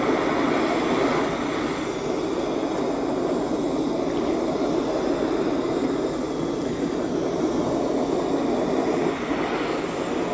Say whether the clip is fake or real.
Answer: real